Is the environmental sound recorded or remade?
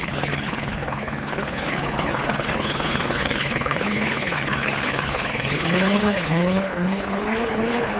remade